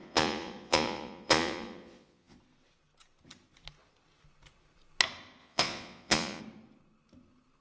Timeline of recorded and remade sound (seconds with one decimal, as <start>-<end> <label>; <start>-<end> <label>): 0.0-2.4 remade; 2.4-5.4 recorded; 5.4-6.4 remade; 6.4-7.6 recorded